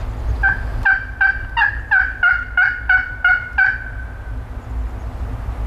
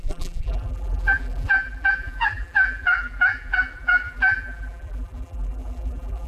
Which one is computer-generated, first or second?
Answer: second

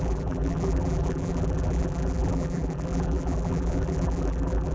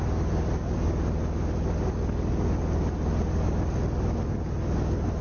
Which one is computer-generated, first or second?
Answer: first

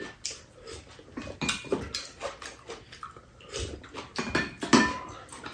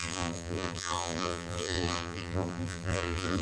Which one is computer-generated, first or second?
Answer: second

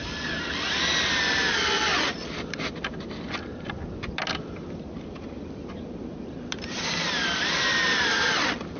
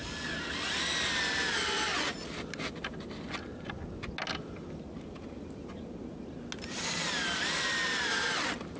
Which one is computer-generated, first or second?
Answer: first